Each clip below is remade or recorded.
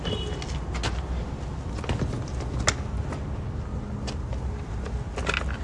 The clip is recorded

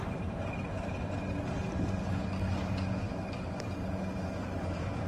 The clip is recorded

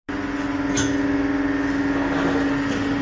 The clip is recorded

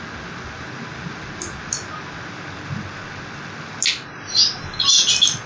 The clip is recorded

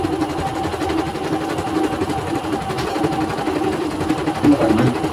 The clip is recorded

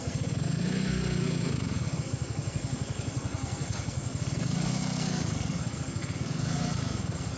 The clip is remade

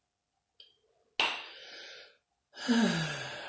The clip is recorded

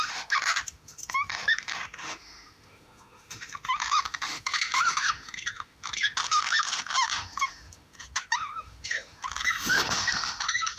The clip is remade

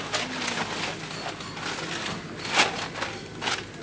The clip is recorded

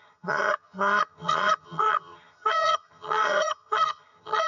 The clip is remade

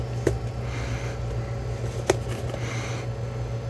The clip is recorded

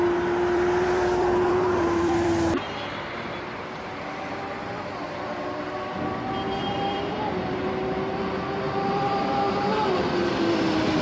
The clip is remade